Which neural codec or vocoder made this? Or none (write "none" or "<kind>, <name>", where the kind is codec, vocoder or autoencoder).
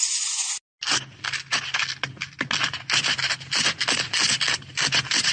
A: none